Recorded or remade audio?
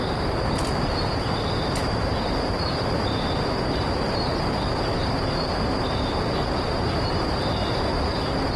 remade